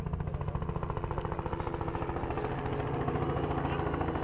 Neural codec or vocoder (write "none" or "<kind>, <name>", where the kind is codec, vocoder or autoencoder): none